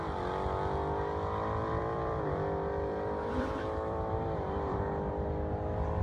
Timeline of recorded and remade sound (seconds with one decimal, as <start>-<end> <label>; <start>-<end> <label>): 0.0-1.6 recorded; 1.6-5.1 remade; 5.1-6.0 recorded